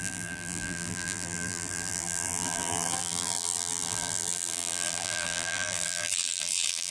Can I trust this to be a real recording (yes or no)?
no